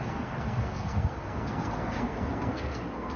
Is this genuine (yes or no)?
no